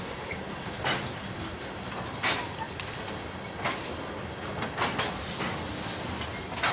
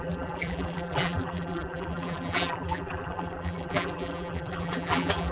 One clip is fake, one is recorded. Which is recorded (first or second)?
first